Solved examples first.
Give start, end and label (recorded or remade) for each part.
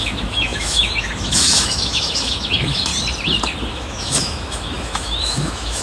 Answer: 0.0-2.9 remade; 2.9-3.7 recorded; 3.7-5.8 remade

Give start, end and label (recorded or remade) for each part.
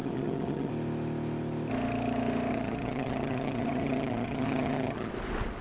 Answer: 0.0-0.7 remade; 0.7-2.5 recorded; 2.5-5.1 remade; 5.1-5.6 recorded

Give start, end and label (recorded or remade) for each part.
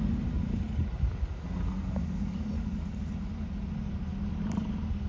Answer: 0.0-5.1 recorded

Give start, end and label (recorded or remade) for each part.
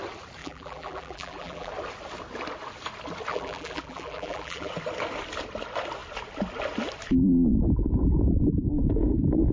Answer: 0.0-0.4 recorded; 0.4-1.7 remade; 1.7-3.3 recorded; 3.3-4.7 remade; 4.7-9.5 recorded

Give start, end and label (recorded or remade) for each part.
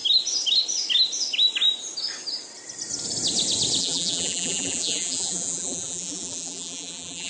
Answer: 0.0-3.8 recorded; 3.8-7.3 remade